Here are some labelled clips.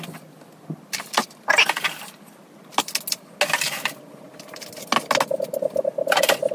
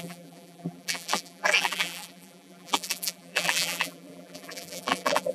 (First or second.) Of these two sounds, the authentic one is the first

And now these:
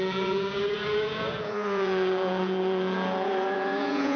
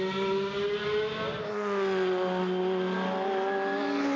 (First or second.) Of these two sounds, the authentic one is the second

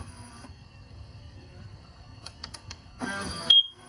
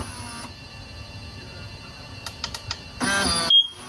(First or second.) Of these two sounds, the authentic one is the second